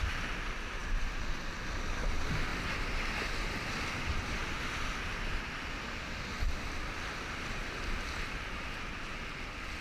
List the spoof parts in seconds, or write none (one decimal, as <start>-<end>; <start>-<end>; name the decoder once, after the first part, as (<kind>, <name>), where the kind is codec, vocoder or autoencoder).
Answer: 0.0-4.4 (vocoder, BigVGAN v2); 7.0-9.8